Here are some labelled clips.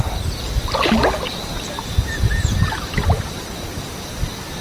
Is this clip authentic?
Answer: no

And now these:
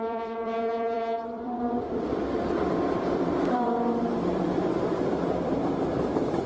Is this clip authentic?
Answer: no